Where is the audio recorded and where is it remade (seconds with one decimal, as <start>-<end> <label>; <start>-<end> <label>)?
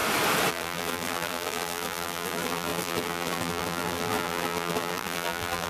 0.0-0.5 recorded; 0.5-5.7 remade